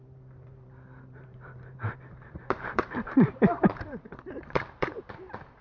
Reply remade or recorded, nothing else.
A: remade